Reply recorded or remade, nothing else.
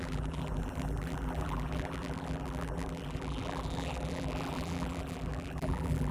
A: remade